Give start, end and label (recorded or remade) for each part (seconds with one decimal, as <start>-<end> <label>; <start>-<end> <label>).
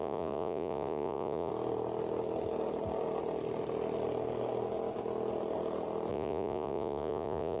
0.0-1.5 remade; 1.5-6.1 recorded; 6.1-7.6 remade